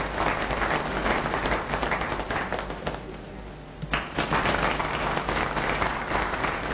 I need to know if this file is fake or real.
real